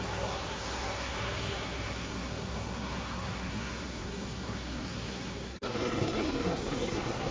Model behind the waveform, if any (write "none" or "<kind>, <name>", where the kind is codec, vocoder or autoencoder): codec, SNAC